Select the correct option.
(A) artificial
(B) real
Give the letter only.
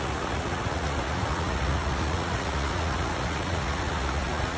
A